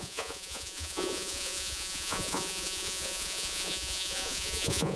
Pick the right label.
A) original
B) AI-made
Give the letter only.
B